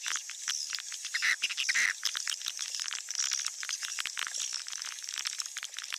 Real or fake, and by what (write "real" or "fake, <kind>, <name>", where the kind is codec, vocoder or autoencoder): real